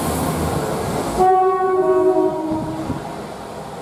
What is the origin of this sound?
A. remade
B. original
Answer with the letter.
B